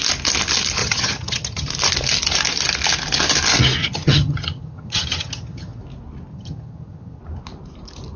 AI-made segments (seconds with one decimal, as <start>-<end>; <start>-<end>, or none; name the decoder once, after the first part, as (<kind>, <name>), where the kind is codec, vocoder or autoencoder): 0.8-1.7 (vocoder, HiFi-GAN); 3.8-5.8; 6.3-7.2